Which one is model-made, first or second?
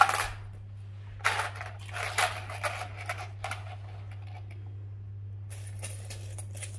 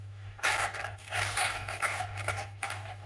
second